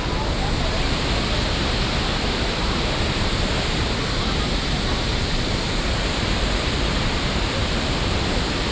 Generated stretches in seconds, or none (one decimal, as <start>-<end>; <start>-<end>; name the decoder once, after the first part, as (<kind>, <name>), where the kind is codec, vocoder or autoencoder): 2.1-3.9 (vocoder, BigVGAN v2); 5.1-8.1